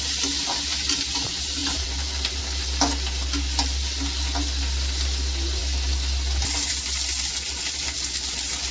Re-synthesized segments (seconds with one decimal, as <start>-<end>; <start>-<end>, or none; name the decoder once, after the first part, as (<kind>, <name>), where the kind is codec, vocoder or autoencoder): 1.6-2.4 (vocoder, BigVGAN v2)